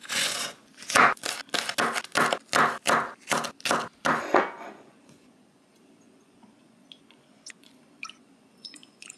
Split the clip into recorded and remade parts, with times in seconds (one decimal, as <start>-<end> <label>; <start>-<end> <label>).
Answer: 0.0-1.2 remade; 1.2-4.2 recorded; 4.2-9.2 remade